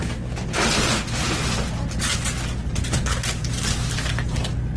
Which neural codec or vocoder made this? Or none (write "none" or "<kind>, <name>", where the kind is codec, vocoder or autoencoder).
none